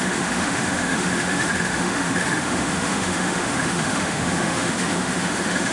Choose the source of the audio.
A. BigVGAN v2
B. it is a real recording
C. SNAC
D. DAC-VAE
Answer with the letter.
D